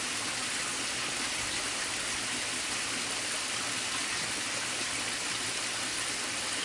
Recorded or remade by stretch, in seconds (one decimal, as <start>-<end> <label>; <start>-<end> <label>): 0.0-6.6 recorded